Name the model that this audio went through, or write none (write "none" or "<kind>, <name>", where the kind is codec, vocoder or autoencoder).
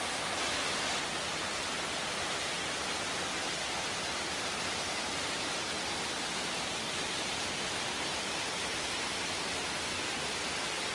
none